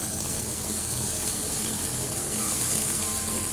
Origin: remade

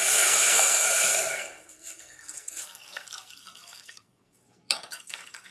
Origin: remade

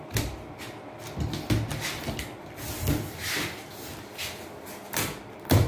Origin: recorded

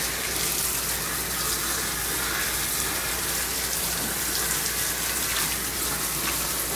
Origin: recorded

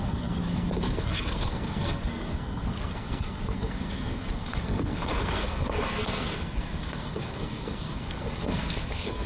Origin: remade